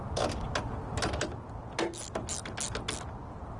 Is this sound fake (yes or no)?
no